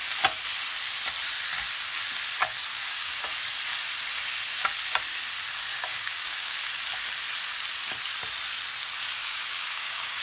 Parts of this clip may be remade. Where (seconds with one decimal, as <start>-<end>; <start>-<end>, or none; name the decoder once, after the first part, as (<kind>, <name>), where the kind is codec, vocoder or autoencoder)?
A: 2.7-3.2 (codec, DAC); 5.7-6.5; 9.2-10.2